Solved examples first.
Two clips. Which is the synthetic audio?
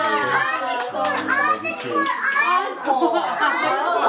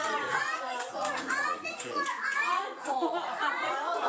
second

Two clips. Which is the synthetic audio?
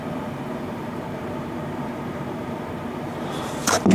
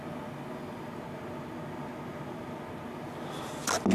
first